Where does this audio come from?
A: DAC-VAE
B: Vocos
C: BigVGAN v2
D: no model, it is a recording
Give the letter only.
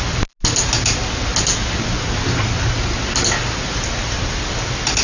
D